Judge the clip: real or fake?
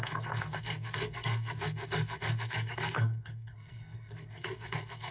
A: fake